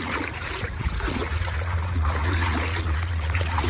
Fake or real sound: fake